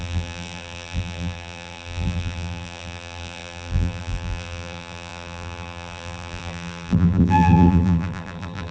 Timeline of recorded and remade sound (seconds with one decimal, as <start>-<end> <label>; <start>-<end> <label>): 0.0-8.7 remade